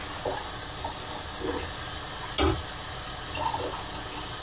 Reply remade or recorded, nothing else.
recorded